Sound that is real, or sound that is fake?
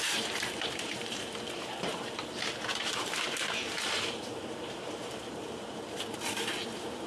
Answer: fake